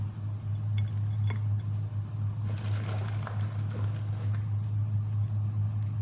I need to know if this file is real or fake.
real